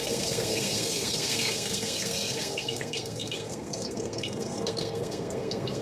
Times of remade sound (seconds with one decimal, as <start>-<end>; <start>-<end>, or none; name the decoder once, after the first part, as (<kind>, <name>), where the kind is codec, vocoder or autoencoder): 0.0-5.8 (codec, SNAC)